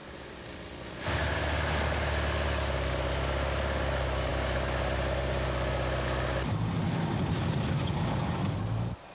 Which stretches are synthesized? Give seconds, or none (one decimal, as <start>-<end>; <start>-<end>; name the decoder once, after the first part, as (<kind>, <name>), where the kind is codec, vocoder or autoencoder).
none